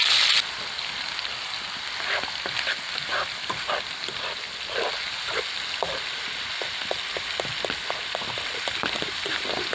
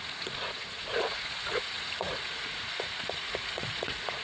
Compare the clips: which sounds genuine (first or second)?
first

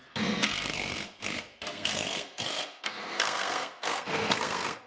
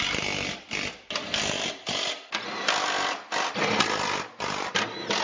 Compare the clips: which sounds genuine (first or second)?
second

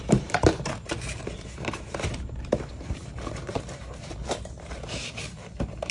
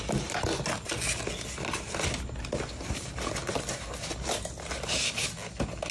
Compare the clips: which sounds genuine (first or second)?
second